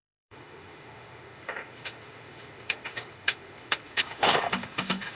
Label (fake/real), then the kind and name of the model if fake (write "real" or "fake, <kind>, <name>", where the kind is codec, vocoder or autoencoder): fake, autoencoder, DAC-VAE